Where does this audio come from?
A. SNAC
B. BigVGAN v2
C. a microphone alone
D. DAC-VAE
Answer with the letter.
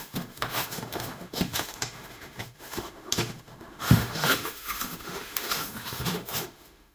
D